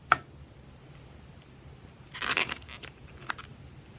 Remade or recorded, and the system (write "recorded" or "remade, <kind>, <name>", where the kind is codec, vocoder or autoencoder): recorded